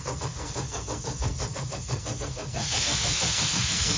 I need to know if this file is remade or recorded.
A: remade